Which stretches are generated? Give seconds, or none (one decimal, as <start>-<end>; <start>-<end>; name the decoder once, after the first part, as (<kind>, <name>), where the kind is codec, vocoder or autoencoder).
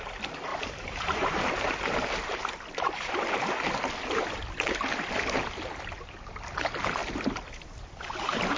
0.5-2.5 (vocoder, BigVGAN v2)